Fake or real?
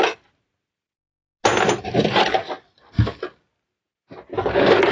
real